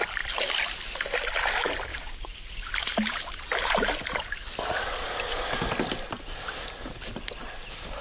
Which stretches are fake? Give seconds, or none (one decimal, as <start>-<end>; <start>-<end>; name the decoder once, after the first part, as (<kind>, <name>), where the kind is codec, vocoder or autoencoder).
1.9-2.7 (codec, DAC); 5.0-5.7